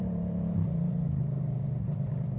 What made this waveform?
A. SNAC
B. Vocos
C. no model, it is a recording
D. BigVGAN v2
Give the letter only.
D